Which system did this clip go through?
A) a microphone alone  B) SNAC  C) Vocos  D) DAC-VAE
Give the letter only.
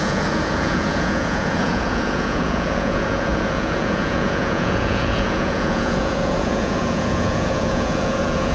C